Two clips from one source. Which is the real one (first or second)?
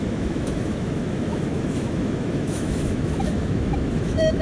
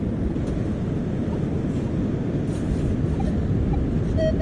second